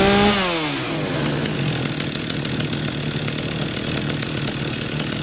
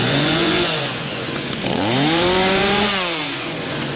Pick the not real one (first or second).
second